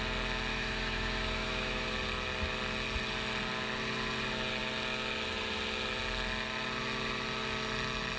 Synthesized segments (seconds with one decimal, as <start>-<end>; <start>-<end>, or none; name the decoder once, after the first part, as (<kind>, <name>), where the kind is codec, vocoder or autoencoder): 0.5-1.9 (autoencoder, DAC-VAE)